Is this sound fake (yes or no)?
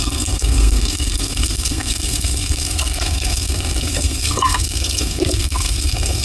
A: yes